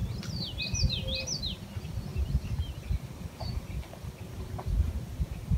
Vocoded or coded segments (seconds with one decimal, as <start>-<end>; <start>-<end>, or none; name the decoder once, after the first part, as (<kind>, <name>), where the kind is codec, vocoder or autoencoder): none